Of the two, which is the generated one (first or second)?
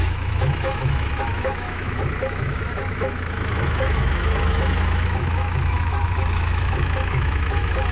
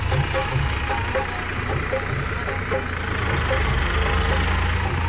first